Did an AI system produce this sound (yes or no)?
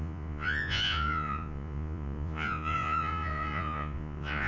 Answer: yes